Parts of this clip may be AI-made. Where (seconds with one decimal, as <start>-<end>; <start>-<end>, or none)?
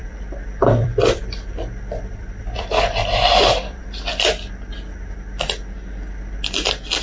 0.0-3.8